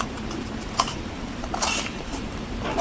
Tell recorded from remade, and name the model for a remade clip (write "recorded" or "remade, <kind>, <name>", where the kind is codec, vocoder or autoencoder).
remade, vocoder, BigVGAN v2